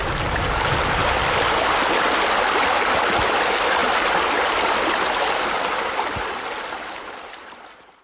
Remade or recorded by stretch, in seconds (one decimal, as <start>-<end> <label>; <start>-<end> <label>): 0.0-8.0 recorded